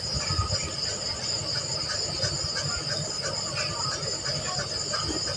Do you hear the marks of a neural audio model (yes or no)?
no